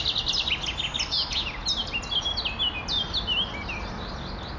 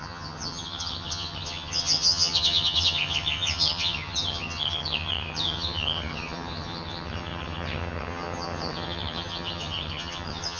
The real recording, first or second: first